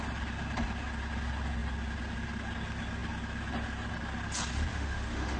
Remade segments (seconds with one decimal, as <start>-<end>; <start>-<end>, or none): 4.7-5.4